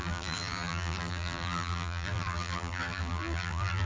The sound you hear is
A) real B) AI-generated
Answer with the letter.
B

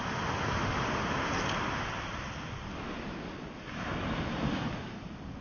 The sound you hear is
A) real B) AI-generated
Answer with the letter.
A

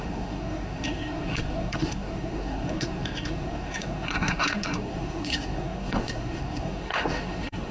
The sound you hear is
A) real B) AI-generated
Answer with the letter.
B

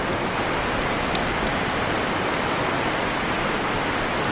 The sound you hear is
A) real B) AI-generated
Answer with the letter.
A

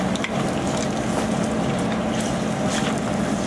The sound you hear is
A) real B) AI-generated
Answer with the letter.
A